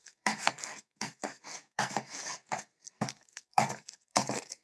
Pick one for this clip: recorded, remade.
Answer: remade